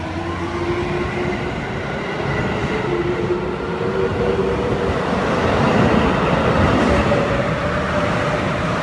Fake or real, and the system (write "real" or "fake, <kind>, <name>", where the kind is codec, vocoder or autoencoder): real